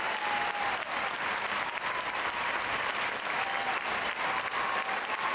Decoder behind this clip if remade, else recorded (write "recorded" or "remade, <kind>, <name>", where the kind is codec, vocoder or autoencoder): recorded